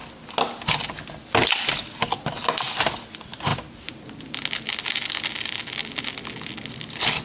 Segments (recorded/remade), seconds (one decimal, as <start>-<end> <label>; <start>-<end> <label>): 0.0-7.2 recorded